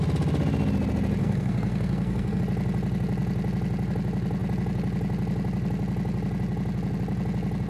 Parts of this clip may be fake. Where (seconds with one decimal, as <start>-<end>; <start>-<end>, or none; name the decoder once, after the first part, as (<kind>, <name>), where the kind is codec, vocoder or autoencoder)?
1.2-2.4 (codec, SNAC)